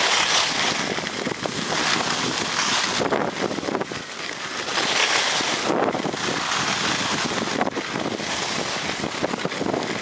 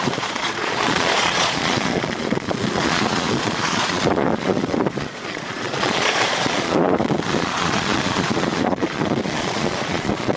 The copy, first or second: second